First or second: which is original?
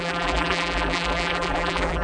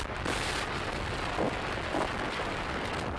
second